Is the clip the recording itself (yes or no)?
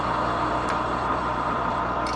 no